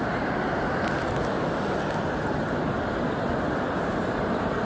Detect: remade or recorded remade